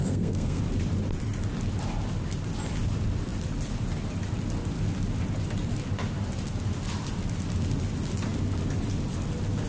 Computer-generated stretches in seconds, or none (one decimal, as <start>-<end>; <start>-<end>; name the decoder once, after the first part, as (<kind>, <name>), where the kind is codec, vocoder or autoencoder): 0.0-0.6 (codec, SNAC)